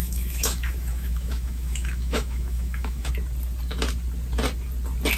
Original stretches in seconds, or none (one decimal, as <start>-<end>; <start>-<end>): 3.1-5.2